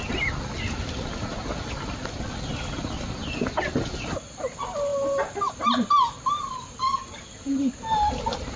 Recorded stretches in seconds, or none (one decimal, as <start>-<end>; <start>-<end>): 0.0-8.6